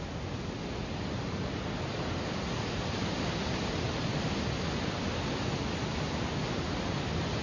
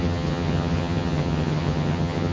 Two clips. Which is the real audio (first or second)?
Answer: first